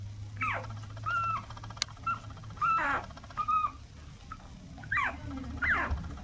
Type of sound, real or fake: real